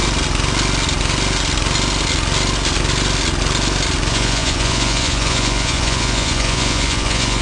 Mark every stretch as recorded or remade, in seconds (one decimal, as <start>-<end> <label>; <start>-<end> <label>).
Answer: 0.0-4.1 recorded; 4.1-7.4 remade